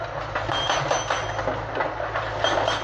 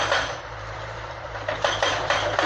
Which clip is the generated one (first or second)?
second